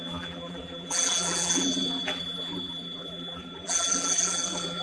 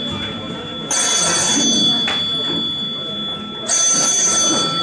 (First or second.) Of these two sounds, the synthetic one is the first